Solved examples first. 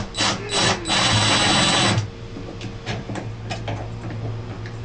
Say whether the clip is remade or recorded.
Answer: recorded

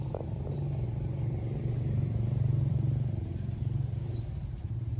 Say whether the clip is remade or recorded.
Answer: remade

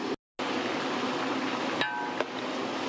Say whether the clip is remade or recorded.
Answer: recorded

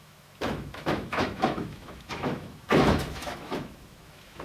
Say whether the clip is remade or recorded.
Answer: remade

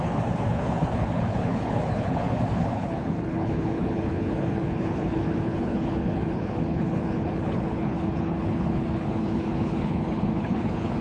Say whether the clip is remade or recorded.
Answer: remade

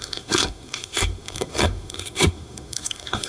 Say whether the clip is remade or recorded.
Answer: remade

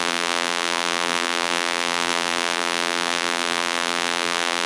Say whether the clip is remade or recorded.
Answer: remade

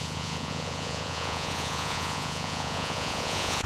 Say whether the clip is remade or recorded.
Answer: remade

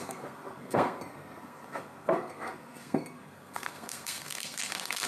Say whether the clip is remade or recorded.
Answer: remade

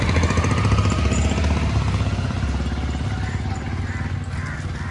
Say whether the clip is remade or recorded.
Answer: recorded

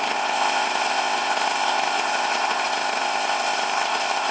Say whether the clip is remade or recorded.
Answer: remade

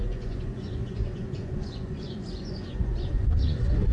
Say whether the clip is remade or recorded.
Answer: remade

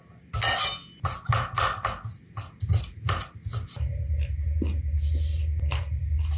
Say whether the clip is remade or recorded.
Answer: recorded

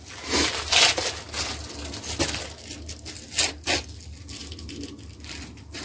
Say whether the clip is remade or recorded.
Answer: recorded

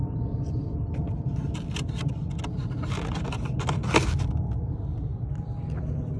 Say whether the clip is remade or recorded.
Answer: recorded